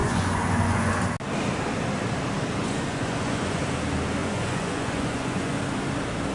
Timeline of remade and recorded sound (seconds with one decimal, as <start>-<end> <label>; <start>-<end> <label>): 0.0-1.0 remade; 1.0-2.6 recorded; 2.6-3.6 remade; 3.6-4.2 recorded; 4.2-5.6 remade; 5.6-6.3 recorded